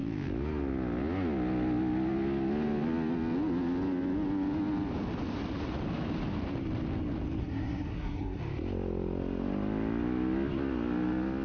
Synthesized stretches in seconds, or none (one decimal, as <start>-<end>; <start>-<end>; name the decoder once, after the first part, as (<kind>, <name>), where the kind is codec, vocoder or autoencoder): 7.4-8.4 (codec, SNAC)